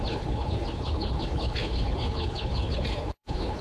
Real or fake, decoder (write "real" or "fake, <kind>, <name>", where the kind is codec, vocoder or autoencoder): fake, codec, HILCodec